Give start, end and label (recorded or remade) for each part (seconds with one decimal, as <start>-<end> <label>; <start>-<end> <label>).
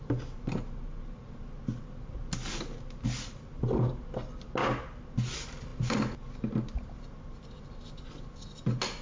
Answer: 0.0-9.0 recorded